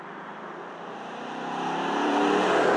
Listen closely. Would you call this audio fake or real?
fake